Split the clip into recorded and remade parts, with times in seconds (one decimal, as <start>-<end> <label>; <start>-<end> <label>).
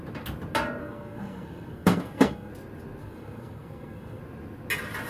0.0-0.8 recorded; 0.8-2.5 remade; 2.5-3.0 recorded; 3.0-4.2 remade; 4.2-5.1 recorded